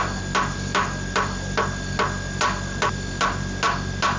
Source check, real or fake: real